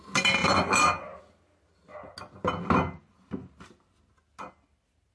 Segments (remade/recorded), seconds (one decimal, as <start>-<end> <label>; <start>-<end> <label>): 0.0-5.1 recorded